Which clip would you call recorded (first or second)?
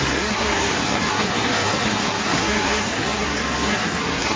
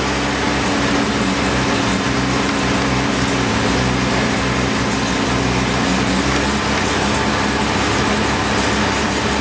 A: second